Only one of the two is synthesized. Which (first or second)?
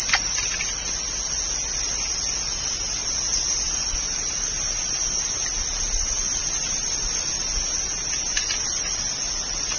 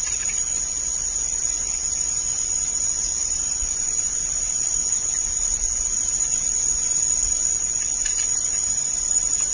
second